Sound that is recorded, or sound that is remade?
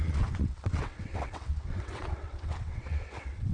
remade